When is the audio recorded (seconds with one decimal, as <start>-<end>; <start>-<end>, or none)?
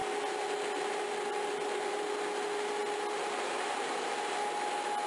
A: 0.0-5.1